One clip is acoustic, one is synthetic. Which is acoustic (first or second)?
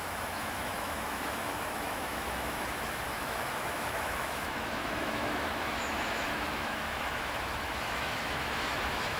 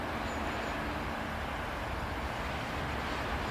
second